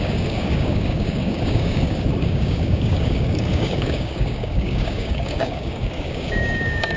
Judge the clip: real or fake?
fake